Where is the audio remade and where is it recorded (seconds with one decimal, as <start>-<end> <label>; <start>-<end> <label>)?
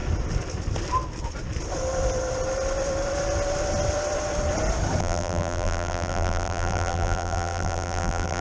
0.0-5.0 recorded; 5.0-8.4 remade